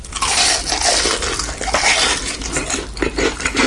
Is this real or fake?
real